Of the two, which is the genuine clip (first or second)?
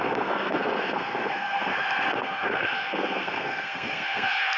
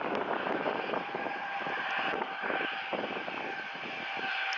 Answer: second